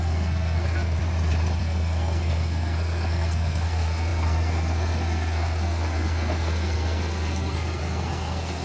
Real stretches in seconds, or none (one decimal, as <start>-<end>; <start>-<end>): 1.0-1.6

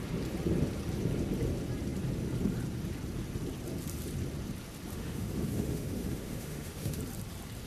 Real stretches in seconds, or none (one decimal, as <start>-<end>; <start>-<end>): 0.0-4.9; 7.0-7.7